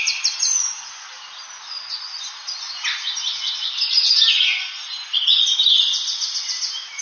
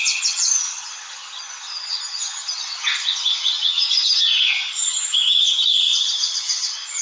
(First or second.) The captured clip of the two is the first